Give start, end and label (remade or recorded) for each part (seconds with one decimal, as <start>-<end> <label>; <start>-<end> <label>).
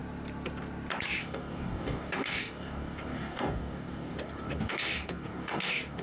0.0-1.2 recorded; 1.2-6.0 remade